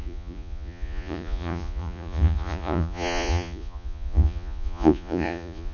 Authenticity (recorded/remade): remade